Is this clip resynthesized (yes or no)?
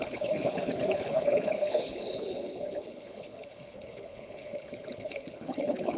yes